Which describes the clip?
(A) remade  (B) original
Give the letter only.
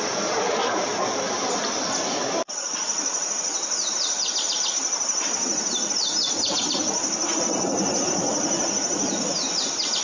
B